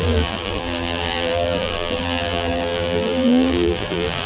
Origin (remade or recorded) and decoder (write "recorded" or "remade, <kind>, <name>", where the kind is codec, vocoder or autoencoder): remade, vocoder, BigVGAN v2